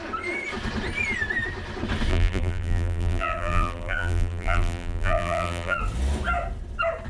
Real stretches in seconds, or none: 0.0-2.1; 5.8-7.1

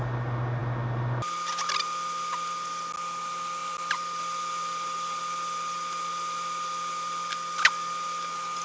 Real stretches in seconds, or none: 0.0-3.6; 5.2-8.6

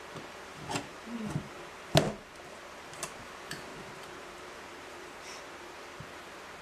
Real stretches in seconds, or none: 0.0-0.9; 1.8-3.7; 5.2-6.6

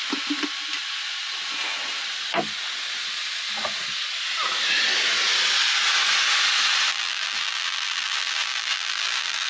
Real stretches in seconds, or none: 0.0-6.9

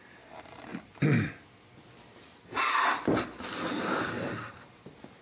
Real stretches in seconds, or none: 0.7-3.8